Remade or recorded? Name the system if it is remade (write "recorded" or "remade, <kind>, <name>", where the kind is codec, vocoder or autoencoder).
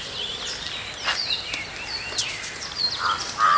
recorded